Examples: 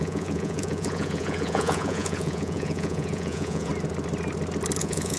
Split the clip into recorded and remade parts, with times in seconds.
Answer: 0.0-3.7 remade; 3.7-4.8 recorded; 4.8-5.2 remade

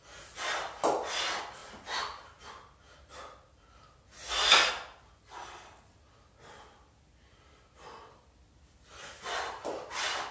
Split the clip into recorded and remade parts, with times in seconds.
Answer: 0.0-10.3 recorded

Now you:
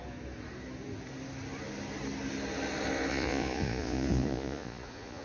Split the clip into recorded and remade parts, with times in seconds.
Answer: 0.0-3.1 recorded; 3.1-5.2 remade